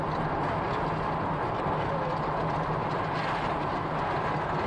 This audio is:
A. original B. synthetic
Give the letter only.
A